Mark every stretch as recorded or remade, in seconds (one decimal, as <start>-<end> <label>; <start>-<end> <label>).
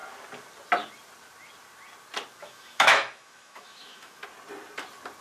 0.0-2.4 recorded; 2.4-4.2 remade; 4.2-5.2 recorded